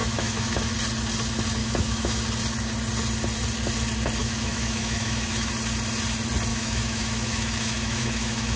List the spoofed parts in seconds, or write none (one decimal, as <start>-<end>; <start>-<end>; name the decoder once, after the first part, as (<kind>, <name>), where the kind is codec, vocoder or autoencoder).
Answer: 0.0-0.6 (autoencoder, DAC-VAE); 1.6-2.2; 4.2-5.5; 6.5-8.6